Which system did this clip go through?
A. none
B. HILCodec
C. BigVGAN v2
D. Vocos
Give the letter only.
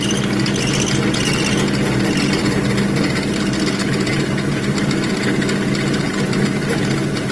A